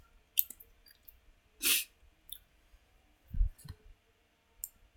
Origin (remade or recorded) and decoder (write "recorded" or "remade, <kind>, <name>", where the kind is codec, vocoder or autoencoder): recorded